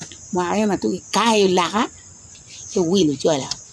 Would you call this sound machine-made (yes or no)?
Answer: yes